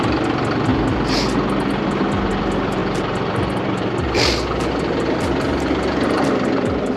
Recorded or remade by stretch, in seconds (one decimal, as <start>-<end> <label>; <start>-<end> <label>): 0.0-0.7 remade; 0.7-2.3 recorded; 2.3-7.0 remade